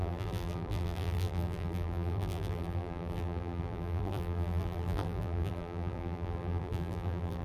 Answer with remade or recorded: remade